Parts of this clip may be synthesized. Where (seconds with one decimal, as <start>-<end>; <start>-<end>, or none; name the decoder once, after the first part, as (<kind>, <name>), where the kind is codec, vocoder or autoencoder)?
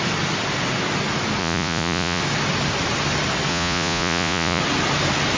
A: 1.4-2.2 (vocoder, Vocos); 3.5-4.6